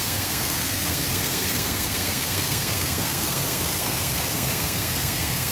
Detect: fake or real fake